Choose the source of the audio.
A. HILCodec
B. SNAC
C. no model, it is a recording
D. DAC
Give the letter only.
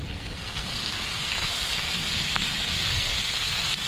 B